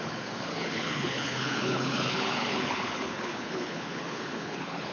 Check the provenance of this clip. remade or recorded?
remade